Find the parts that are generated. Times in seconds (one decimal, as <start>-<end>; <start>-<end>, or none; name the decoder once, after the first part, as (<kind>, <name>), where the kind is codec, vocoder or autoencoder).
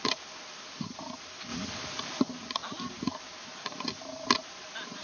none